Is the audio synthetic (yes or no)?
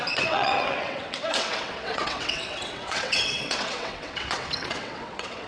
yes